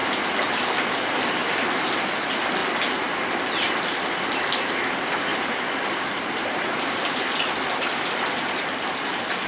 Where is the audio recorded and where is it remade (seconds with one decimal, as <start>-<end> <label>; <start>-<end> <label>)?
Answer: 0.0-0.5 recorded; 0.5-1.4 remade; 1.4-2.2 recorded; 2.2-2.6 remade; 2.6-4.7 recorded; 4.7-9.5 remade